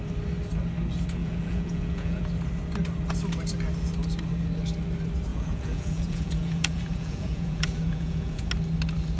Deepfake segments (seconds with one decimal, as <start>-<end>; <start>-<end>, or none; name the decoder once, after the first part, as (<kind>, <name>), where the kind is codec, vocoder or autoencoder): 1.2-2.2 (vocoder, Vocos); 5.3-8.5